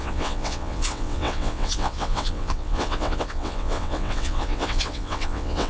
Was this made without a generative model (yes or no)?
no